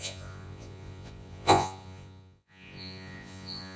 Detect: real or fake fake